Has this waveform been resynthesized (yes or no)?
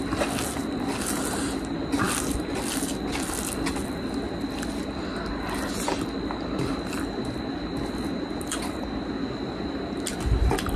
no